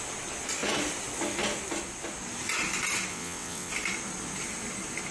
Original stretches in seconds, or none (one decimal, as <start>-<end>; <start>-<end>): 0.0-3.1; 3.7-5.1